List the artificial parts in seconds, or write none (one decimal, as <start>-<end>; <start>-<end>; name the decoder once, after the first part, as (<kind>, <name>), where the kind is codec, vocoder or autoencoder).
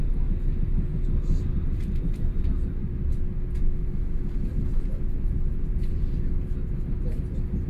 none